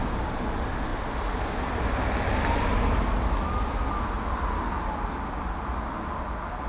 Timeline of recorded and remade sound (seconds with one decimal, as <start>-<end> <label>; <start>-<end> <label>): 0.0-6.7 recorded